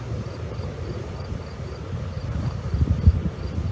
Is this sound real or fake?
fake